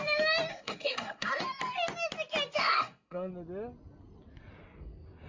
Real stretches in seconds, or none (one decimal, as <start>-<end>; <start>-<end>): 0.0-0.5; 1.4-2.6; 3.3-5.3